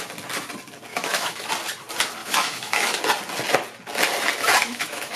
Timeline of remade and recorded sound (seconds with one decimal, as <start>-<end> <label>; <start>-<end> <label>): 0.0-0.9 recorded; 0.9-1.5 remade; 1.5-2.2 recorded; 2.2-3.0 remade; 3.0-4.6 recorded; 4.6-5.2 remade